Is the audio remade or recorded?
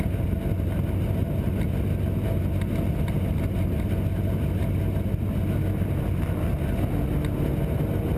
recorded